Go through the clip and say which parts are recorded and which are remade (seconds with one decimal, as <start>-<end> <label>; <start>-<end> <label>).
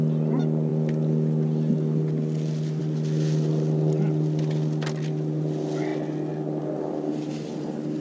0.0-8.0 recorded